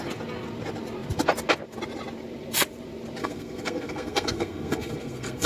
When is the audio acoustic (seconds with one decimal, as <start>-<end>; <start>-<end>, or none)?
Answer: 0.0-3.2